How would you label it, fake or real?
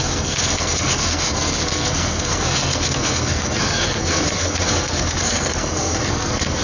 fake